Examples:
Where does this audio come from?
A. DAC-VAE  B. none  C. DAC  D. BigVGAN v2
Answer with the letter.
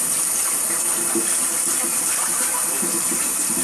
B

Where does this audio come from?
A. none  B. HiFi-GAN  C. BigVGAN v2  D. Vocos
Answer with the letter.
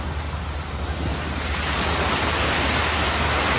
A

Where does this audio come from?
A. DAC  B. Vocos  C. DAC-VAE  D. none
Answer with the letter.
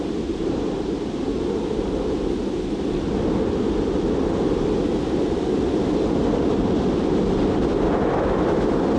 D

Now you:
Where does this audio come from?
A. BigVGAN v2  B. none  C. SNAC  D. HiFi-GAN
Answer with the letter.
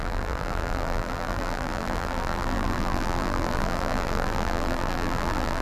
A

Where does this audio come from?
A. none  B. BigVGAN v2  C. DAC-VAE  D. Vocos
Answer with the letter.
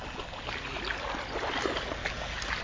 A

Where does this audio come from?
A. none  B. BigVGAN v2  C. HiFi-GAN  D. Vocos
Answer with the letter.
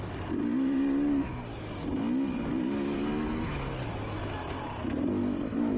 A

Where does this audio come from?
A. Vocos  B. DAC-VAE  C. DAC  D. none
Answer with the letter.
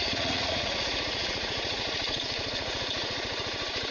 A